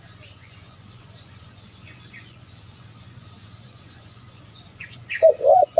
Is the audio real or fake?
fake